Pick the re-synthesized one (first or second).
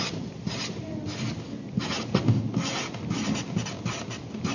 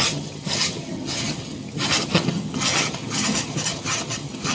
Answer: second